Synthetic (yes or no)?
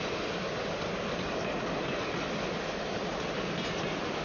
no